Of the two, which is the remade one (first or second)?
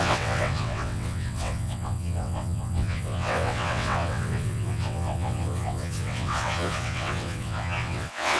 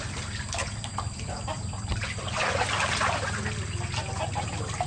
first